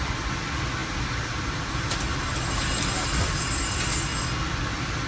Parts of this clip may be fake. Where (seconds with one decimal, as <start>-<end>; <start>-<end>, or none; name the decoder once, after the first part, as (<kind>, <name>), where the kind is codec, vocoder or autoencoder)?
none